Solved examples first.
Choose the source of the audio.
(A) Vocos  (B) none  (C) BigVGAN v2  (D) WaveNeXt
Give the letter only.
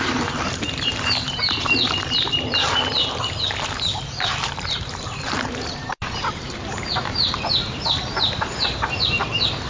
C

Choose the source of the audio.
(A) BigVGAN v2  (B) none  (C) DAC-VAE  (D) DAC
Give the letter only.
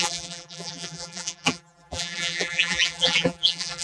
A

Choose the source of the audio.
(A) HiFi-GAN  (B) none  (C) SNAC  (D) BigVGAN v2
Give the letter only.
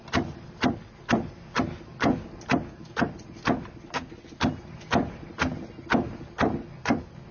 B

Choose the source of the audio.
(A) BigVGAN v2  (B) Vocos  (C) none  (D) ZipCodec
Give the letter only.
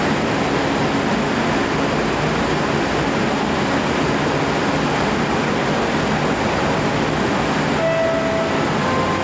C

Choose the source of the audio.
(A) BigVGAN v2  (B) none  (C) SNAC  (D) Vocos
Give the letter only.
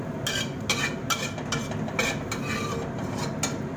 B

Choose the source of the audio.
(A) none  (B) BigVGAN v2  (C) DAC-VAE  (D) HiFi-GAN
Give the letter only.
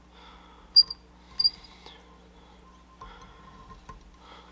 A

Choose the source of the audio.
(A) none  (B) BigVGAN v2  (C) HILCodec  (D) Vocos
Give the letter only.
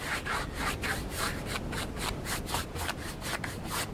A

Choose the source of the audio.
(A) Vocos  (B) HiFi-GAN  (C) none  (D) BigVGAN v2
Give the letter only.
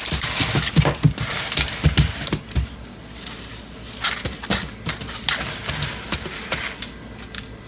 C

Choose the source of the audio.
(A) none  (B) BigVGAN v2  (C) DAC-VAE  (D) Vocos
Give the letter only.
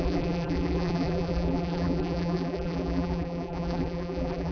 B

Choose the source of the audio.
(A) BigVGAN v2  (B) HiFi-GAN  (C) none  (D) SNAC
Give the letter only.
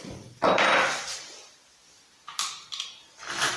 A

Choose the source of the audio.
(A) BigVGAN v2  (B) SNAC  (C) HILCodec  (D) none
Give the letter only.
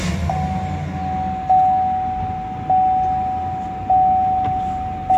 D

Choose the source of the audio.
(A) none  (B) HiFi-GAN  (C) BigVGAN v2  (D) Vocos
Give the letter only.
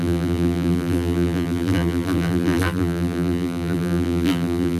C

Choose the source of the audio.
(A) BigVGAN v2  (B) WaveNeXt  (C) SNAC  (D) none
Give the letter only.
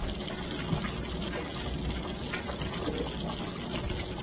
D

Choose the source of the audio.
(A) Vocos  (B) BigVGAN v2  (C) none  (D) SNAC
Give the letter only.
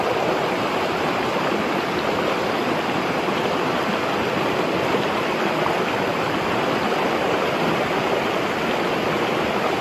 C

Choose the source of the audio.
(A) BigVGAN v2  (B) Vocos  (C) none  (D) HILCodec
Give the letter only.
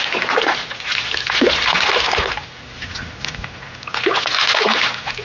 C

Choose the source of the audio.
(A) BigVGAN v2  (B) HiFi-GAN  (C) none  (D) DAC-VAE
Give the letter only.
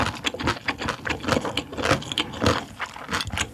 C